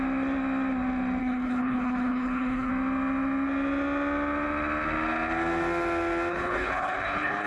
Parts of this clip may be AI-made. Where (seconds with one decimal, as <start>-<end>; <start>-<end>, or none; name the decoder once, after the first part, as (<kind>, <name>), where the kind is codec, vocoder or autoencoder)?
1.2-2.7 (codec, HILCodec); 6.3-7.5